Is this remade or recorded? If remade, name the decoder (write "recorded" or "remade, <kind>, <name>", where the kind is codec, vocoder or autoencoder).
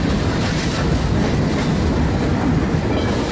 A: recorded